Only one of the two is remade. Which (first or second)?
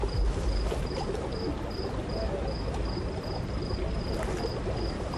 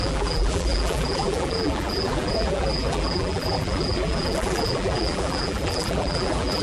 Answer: second